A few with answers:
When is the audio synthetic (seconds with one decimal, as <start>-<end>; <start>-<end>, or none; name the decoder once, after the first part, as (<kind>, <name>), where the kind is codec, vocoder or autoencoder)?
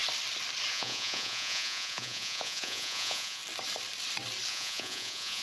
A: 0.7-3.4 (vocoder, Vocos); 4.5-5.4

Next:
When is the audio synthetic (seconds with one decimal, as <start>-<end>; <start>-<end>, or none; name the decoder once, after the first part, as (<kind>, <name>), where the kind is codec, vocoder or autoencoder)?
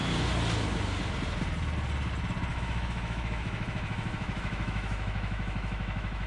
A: 2.5-6.3 (autoencoder, DAC-VAE)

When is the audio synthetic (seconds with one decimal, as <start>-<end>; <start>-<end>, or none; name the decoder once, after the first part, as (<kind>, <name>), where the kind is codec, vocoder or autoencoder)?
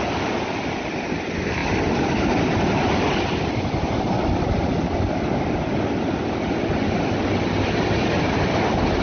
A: none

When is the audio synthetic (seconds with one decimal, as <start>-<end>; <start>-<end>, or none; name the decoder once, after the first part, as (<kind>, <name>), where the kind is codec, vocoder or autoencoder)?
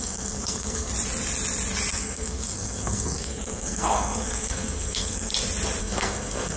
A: 0.0-0.9 (codec, SNAC); 1.9-5.3; 5.8-6.6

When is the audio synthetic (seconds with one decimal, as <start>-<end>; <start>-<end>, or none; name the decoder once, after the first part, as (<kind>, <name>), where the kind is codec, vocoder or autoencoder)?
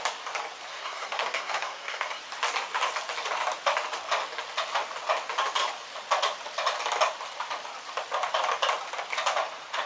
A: 0.7-2.2 (codec, SNAC)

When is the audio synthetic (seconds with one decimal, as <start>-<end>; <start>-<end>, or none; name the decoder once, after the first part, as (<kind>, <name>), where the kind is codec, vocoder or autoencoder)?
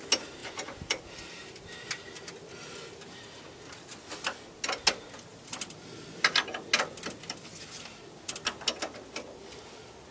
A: 0.4-2.1 (vocoder, BigVGAN v2)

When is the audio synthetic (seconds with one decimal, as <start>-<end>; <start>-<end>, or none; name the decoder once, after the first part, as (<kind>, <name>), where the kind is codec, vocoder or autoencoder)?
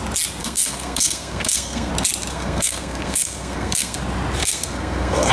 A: 0.4-1.9 (codec, SNAC); 2.3-4.0; 4.4-5.3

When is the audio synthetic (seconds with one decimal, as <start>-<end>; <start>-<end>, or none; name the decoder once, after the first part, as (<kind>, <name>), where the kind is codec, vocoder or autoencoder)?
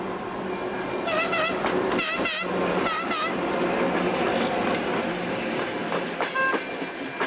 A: none